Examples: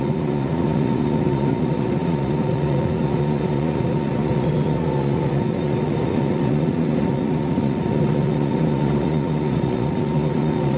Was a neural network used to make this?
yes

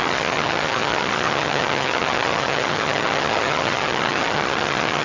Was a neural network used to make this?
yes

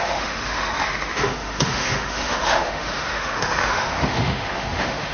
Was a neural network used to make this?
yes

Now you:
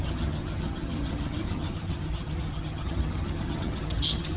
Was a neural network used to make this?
yes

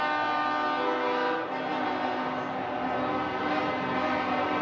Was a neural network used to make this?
no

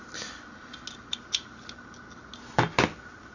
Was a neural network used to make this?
no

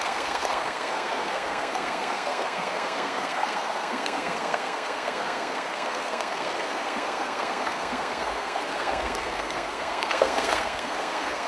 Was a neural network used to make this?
yes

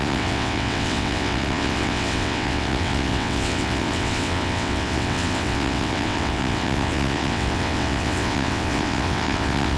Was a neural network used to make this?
yes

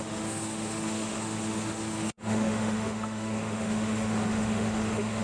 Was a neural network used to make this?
yes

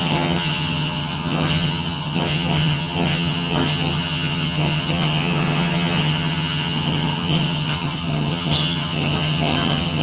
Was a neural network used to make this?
yes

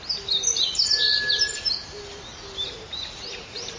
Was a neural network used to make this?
no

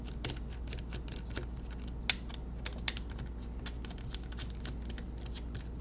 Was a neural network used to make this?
no